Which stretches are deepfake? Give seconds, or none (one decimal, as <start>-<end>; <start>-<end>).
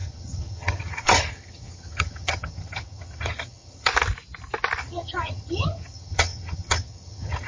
0.0-3.9; 4.8-7.5